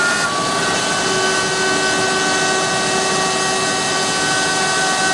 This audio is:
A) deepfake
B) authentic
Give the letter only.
B